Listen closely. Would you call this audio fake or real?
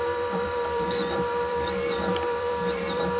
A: fake